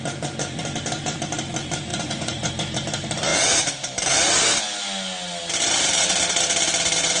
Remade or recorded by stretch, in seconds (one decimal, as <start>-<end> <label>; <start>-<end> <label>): 0.0-1.9 recorded; 1.9-2.5 remade; 2.5-7.2 recorded